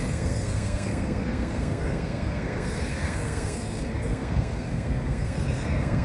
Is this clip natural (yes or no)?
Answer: no